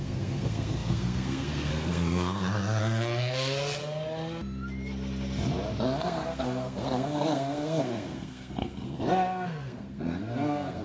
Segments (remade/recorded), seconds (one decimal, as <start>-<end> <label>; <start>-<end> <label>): 0.0-3.8 remade; 3.8-6.0 recorded; 6.0-10.8 remade